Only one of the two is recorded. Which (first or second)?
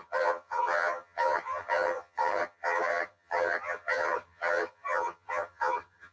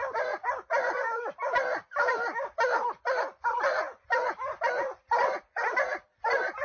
second